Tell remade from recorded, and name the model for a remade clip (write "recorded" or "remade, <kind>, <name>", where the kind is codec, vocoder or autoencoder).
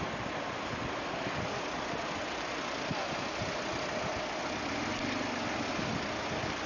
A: recorded